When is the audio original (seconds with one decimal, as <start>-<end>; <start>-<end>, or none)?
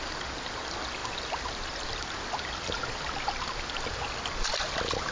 0.0-5.1